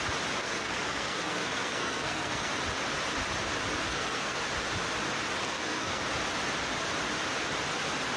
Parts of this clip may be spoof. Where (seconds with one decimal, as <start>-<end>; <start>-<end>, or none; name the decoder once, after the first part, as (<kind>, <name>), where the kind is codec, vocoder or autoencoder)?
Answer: 0.4-2.5 (codec, SNAC); 3.9-4.4; 5.4-6.0

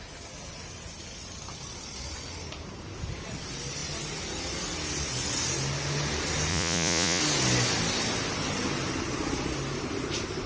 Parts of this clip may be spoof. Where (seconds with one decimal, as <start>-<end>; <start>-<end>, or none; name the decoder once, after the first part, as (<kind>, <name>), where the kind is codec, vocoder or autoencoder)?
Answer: 6.5-7.2 (vocoder, Vocos)

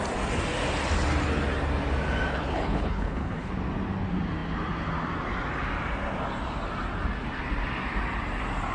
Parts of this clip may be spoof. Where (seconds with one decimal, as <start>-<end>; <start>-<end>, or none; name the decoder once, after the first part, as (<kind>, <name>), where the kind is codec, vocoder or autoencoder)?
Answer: 2.3-3.5 (codec, HILCodec)

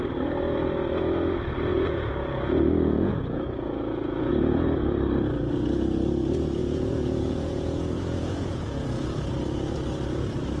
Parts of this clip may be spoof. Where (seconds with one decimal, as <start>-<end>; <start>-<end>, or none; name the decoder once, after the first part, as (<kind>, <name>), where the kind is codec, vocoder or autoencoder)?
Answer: 1.7-4.3 (vocoder, Vocos); 6.6-9.3

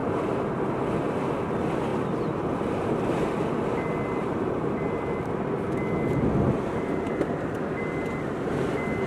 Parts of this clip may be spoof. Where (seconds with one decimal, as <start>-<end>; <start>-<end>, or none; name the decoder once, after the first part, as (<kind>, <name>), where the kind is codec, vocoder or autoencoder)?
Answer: 0.0-0.5 (vocoder, BigVGAN v2)